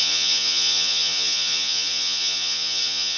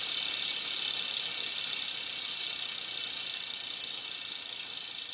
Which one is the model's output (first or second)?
first